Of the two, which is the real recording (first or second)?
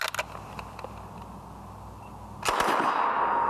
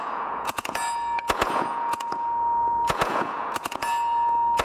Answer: first